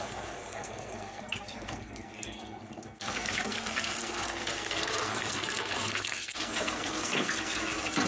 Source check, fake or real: fake